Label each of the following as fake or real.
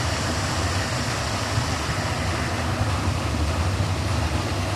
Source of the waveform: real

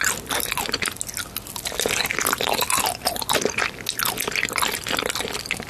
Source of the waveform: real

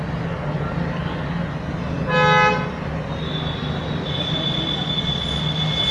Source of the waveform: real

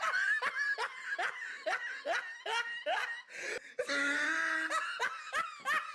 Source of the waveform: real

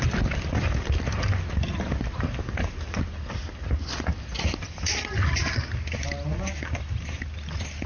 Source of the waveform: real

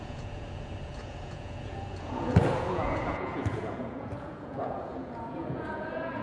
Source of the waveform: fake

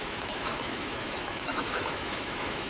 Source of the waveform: fake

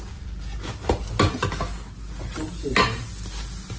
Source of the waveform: real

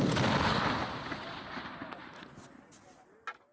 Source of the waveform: real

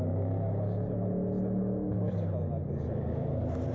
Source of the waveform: real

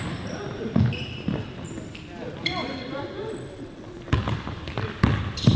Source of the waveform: real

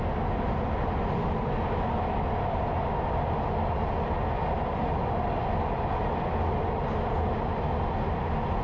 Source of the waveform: real